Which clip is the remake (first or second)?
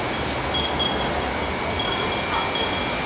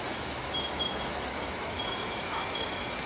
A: second